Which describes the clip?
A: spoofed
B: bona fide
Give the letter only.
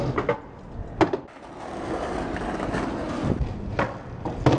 B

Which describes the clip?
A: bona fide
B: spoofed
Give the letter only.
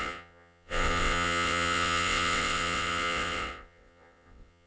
B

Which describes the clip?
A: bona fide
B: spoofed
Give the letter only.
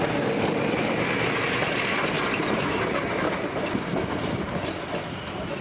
A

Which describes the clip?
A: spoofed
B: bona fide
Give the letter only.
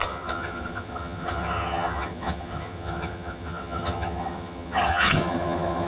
A